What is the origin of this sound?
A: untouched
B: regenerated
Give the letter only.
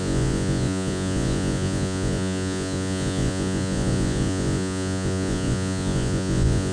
B